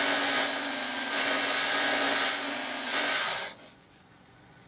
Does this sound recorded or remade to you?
remade